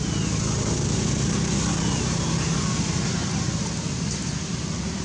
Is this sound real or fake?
real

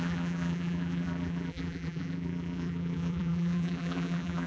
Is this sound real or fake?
fake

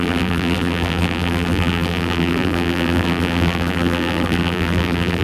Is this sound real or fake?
fake